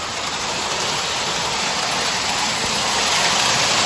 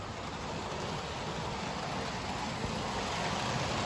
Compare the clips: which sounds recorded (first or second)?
second